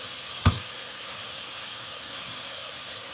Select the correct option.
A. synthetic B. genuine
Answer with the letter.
A